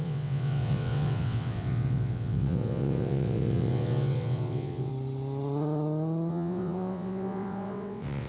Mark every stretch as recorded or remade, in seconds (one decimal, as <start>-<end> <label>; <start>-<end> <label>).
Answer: 0.0-4.9 remade; 4.9-6.3 recorded; 6.3-8.3 remade